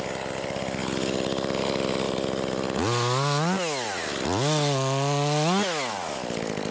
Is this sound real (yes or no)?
yes